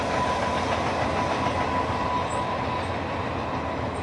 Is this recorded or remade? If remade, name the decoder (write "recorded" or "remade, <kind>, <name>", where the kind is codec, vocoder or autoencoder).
recorded